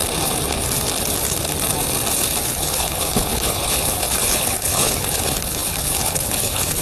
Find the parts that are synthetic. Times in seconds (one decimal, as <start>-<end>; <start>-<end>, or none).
2.5-6.8